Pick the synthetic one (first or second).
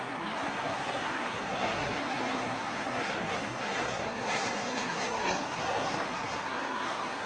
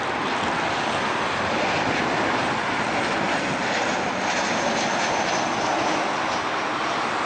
first